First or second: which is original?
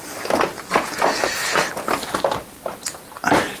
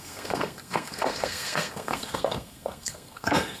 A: first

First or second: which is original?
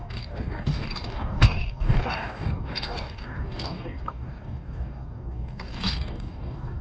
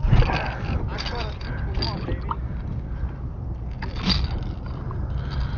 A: second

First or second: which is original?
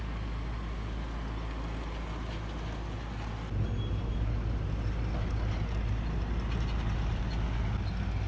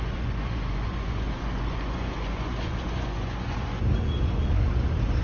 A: first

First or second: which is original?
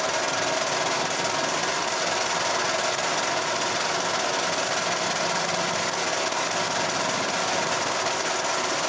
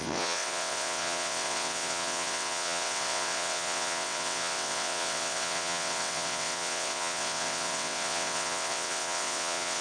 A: first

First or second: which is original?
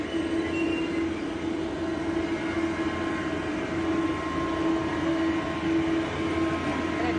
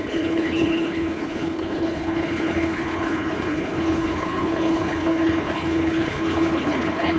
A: first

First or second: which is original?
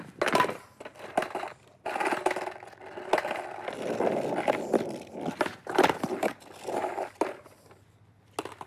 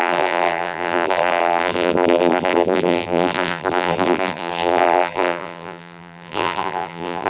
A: first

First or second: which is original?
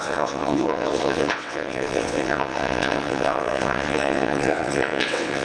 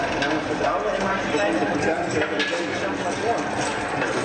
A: second